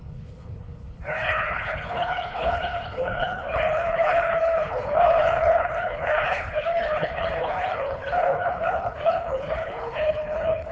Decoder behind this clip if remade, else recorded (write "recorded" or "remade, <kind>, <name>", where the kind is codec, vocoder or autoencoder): remade, codec, HILCodec